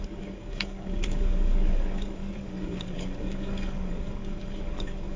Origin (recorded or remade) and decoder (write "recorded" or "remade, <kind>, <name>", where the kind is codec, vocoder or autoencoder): remade, codec, DAC